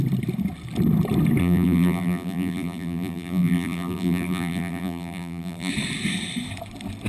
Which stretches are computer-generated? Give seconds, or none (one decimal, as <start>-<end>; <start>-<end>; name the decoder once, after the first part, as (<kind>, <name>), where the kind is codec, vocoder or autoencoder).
1.4-5.7 (vocoder, BigVGAN v2)